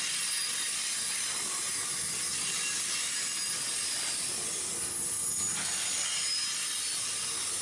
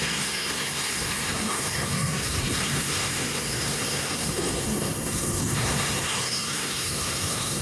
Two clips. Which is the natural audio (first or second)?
first